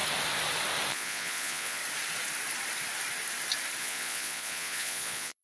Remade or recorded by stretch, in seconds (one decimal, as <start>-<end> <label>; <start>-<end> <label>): 0.0-0.9 recorded; 0.9-1.8 remade; 1.8-3.8 recorded; 3.8-5.4 remade